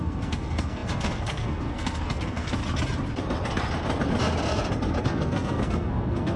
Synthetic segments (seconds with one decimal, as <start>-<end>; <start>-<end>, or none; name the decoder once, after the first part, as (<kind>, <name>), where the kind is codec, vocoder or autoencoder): 0.0-2.6 (codec, SNAC); 5.0-6.4